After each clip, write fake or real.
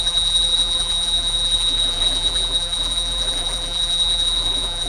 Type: fake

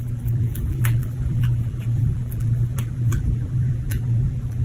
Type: fake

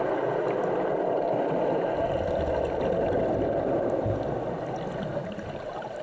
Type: real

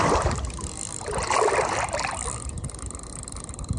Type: real